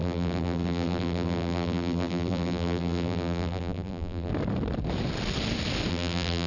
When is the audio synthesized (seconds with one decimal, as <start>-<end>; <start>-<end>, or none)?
0.0-4.3; 5.9-6.5